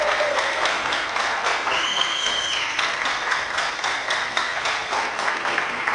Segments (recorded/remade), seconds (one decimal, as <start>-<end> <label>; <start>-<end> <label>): 0.0-5.9 remade